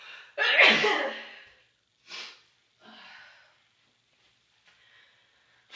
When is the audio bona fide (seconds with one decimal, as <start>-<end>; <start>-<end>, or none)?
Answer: 0.0-5.8